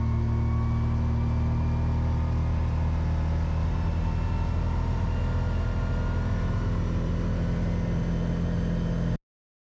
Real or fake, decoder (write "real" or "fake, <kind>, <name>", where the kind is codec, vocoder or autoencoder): real